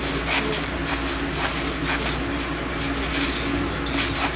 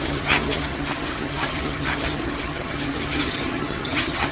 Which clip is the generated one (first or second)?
second